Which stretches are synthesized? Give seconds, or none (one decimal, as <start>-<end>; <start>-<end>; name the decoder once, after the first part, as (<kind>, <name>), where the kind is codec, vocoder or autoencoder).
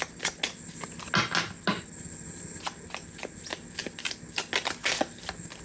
none